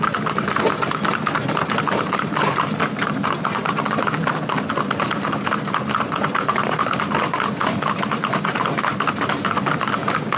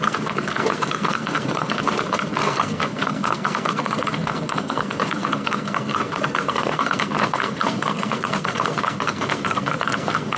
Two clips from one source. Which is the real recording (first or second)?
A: first